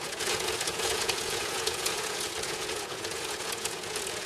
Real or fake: fake